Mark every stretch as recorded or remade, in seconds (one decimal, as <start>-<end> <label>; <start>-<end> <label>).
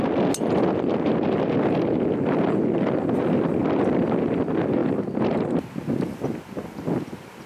0.0-7.5 recorded